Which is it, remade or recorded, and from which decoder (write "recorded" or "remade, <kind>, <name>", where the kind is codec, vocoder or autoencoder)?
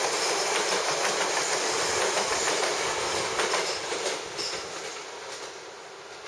recorded